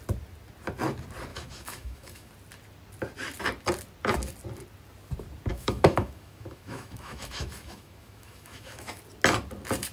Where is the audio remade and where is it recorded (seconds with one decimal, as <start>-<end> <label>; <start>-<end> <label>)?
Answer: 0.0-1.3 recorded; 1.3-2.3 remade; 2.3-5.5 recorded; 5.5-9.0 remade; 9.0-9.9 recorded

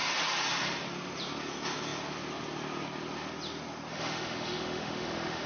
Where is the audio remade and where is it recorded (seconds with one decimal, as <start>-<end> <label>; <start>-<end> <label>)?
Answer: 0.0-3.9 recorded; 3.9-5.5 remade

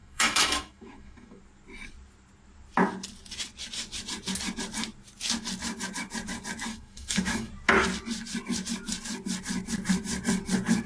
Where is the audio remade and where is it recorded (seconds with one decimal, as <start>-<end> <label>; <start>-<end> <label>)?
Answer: 0.0-1.4 remade; 1.4-6.7 recorded; 6.7-7.5 remade; 7.5-10.9 recorded

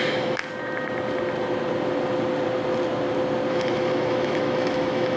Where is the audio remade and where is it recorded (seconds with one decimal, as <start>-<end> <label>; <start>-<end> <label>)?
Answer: 0.0-0.4 remade; 0.4-3.5 recorded; 3.5-5.2 remade

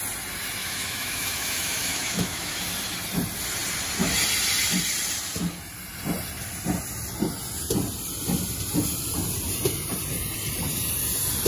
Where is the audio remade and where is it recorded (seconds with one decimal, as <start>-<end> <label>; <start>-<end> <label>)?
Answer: 0.0-0.6 recorded; 0.6-2.6 remade; 2.6-11.5 recorded

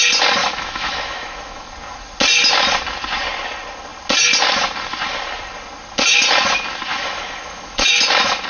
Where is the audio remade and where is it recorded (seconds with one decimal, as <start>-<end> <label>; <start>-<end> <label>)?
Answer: 0.0-0.4 recorded; 0.4-1.7 remade; 1.7-6.9 recorded; 6.9-7.9 remade; 7.9-8.5 recorded

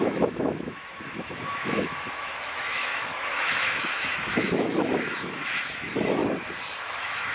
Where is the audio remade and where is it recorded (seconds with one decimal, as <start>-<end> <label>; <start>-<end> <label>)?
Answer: 0.0-6.2 remade; 6.2-6.8 recorded; 6.8-7.3 remade

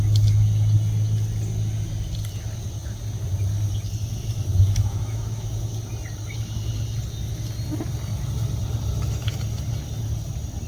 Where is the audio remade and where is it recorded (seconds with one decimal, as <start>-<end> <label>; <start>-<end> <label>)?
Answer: 0.0-4.5 recorded; 4.5-5.7 remade; 5.7-10.7 recorded